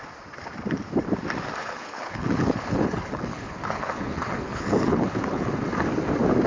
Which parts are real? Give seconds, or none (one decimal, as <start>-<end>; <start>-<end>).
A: 0.0-1.6; 5.5-6.5